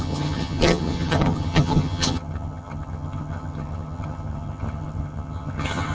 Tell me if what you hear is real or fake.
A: fake